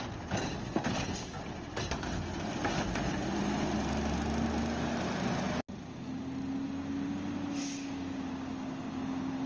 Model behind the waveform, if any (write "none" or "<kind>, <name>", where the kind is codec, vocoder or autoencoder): none